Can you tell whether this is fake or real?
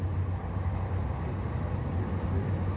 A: real